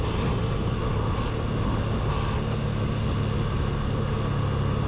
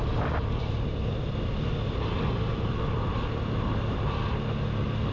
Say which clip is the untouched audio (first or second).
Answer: first